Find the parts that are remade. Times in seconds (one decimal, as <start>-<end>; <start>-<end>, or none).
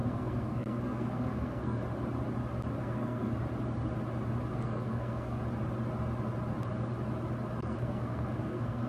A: 0.0-1.8; 2.8-3.3; 4.5-5.4; 7.6-8.9